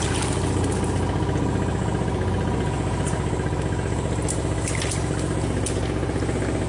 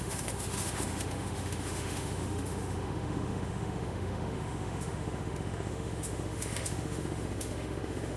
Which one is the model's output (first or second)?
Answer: second